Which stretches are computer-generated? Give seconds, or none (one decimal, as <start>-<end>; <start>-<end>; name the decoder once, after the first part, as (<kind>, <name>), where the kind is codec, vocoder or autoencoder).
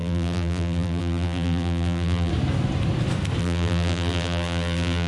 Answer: 0.0-2.3 (vocoder, BigVGAN v2); 3.4-5.1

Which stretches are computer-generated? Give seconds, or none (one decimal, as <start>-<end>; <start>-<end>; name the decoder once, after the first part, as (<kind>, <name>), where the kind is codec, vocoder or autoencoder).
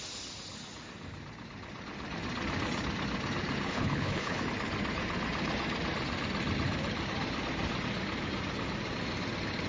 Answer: 3.7-4.4 (codec, HILCodec)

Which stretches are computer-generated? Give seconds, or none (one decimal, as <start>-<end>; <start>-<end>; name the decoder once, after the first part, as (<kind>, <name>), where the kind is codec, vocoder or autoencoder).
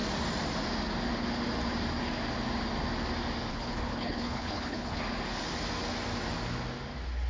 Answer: 3.5-5.0 (codec, HILCodec)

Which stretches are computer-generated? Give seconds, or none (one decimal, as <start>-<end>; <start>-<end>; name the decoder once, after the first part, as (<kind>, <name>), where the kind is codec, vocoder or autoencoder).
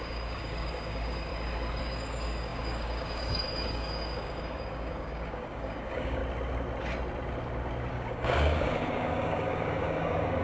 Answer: 0.0-1.3 (codec, DAC); 1.8-6.2; 7.9-10.4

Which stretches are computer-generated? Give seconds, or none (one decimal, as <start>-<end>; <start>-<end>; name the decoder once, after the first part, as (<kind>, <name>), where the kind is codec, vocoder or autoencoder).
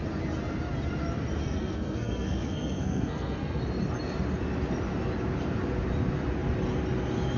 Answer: 1.4-3.6 (codec, SNAC)